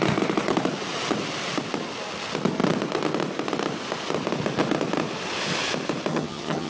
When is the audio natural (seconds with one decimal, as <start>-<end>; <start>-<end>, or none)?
0.0-6.1